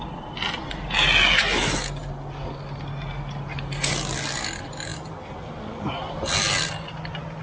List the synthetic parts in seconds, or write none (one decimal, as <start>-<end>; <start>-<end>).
none